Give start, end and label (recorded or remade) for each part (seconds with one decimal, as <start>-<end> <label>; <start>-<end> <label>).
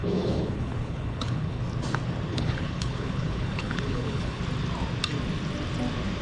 0.0-1.6 remade; 1.6-2.3 recorded; 2.3-4.4 remade; 4.4-6.2 recorded